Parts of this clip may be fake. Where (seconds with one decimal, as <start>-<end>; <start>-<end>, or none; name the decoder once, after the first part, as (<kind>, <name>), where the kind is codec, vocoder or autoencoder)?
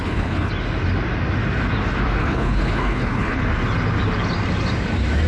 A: 0.0-0.5 (codec, HILCodec); 2.2-3.4